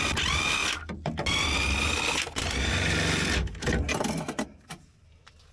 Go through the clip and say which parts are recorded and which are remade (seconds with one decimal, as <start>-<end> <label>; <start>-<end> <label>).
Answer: 0.0-5.5 recorded